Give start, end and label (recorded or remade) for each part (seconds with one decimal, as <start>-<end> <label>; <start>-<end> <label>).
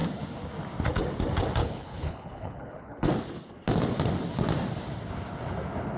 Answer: 0.0-1.6 recorded; 1.6-3.1 remade; 3.1-6.0 recorded